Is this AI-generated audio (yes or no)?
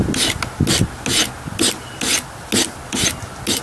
no